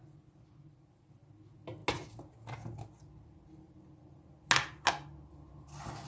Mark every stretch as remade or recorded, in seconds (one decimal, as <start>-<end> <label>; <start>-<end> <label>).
0.0-6.1 recorded

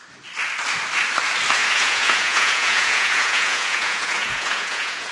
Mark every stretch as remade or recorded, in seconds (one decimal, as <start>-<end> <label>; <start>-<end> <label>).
0.0-1.6 recorded; 1.6-5.1 remade

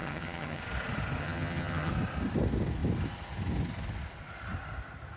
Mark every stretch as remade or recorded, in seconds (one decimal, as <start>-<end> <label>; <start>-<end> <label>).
0.0-0.6 remade; 0.6-1.2 recorded; 1.2-1.9 remade; 1.9-5.2 recorded

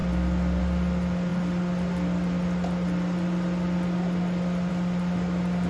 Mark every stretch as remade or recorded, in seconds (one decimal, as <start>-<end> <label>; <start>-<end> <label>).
0.0-5.7 recorded

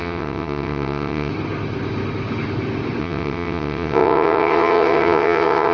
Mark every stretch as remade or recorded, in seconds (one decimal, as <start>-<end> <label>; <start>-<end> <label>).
0.0-1.3 remade; 1.3-3.0 recorded; 3.0-5.7 remade